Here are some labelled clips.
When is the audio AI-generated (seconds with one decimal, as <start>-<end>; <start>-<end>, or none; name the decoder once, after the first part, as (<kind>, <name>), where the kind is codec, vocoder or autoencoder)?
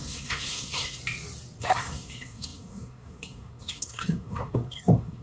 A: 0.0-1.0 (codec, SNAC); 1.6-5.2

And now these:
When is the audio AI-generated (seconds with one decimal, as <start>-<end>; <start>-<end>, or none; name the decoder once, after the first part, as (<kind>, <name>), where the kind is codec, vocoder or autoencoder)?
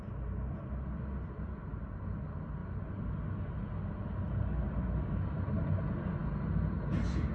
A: none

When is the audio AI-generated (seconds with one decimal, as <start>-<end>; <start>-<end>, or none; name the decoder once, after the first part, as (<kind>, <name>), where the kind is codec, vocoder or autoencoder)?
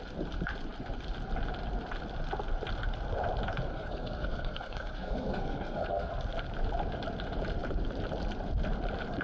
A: 3.7-6.1 (codec, SNAC)